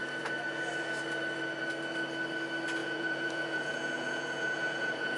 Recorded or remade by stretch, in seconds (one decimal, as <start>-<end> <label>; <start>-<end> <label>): 0.0-2.8 recorded; 2.8-5.2 remade

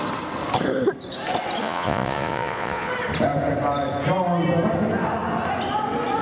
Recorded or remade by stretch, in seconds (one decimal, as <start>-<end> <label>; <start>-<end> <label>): 0.0-1.6 recorded; 1.6-2.9 remade; 2.9-6.2 recorded